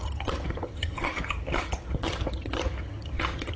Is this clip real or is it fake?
fake